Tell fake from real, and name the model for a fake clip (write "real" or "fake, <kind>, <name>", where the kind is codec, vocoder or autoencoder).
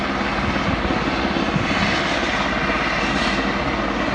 real